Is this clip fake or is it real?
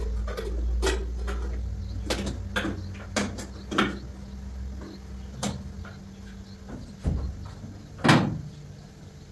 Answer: real